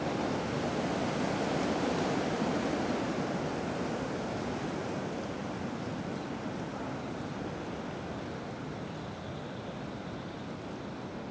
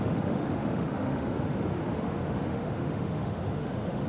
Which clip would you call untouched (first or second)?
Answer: first